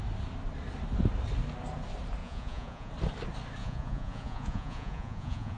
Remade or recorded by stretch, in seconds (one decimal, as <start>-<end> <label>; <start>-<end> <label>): 0.0-2.2 recorded; 2.2-2.9 remade; 2.9-3.6 recorded; 3.6-5.6 remade